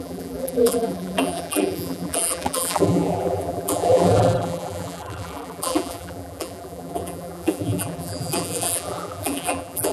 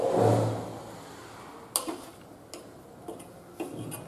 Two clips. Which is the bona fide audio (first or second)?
second